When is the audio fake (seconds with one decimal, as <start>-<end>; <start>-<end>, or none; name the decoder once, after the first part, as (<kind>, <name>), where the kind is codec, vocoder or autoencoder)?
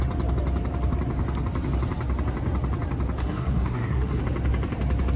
3.2-4.2 (codec, SNAC)